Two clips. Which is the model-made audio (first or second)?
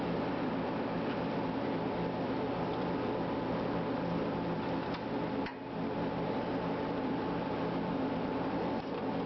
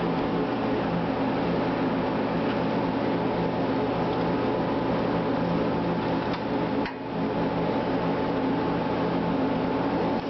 first